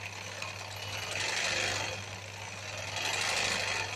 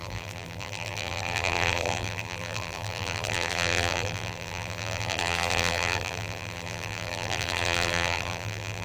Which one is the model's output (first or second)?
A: second